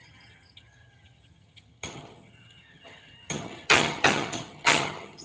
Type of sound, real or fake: fake